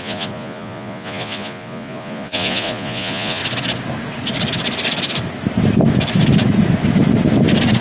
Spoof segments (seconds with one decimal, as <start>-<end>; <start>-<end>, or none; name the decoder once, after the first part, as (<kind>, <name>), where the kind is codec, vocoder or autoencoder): 0.0-3.4 (vocoder, Vocos)